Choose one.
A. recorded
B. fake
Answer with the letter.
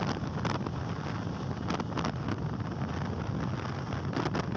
A